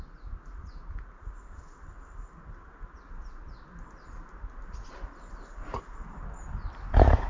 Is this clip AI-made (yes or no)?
no